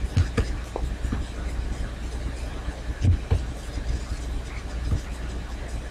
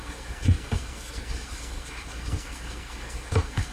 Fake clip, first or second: second